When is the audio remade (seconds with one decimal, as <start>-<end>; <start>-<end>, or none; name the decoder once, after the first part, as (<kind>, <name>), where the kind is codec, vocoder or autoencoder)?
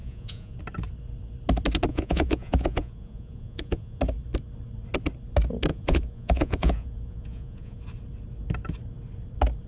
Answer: 0.0-0.6 (vocoder, Vocos); 1.9-4.0; 5.7-7.8